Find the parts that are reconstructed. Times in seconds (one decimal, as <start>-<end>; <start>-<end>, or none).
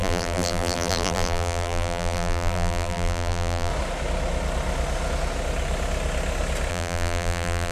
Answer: 0.0-3.7; 6.7-7.7